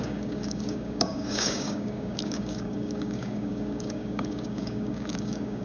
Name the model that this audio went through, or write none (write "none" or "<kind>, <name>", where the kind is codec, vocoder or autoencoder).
codec, DAC